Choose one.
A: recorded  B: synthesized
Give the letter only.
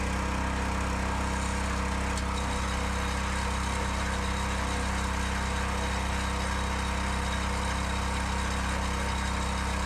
A